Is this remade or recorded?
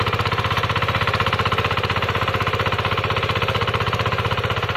recorded